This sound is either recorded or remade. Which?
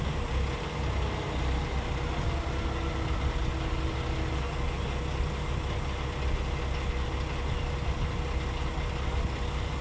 recorded